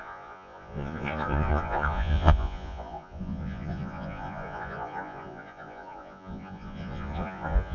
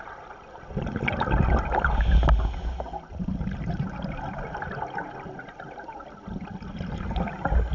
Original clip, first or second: second